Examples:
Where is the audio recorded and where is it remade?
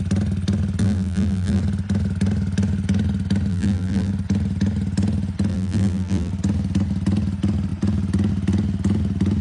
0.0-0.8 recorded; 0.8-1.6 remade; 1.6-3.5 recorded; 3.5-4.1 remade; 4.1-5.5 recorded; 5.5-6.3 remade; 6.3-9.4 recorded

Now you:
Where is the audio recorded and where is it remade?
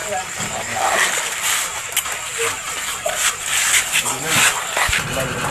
0.0-3.3 remade; 3.3-5.5 recorded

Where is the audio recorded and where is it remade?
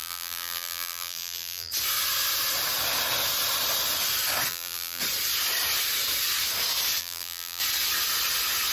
0.0-1.7 remade; 1.7-4.5 recorded; 4.5-5.0 remade; 5.0-7.0 recorded; 7.0-7.6 remade; 7.6-8.7 recorded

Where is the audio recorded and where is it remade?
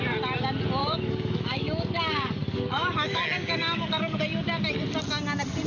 0.0-0.8 recorded; 0.8-4.2 remade; 4.2-5.7 recorded